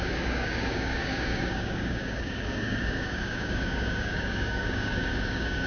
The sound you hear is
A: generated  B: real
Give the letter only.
A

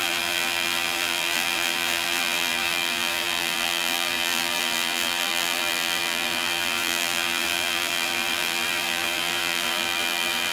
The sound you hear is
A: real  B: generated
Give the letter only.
B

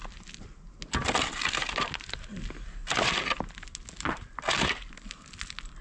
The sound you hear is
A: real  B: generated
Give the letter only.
A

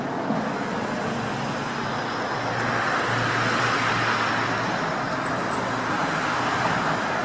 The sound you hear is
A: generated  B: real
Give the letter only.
B